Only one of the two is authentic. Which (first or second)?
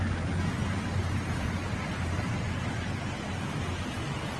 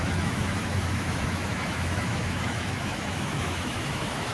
first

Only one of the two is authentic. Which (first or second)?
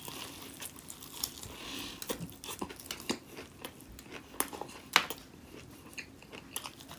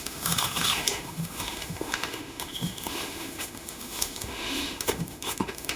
first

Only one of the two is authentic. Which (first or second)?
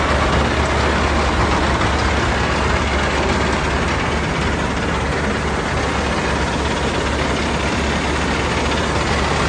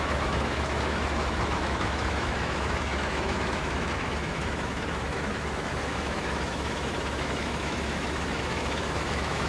first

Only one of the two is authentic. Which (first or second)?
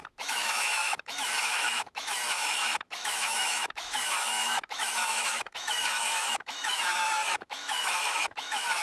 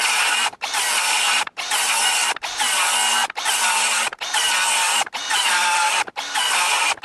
second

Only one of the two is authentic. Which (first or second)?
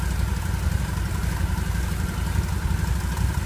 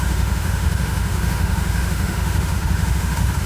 first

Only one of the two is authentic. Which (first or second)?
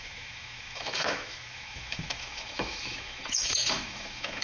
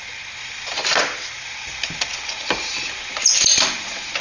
second